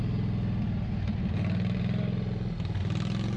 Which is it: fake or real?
real